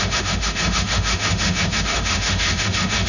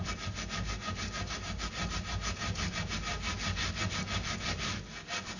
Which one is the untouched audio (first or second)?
second